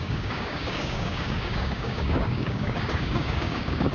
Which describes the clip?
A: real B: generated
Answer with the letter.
B